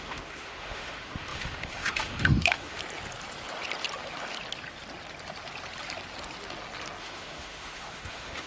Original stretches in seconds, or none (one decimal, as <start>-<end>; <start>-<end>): 2.8-7.0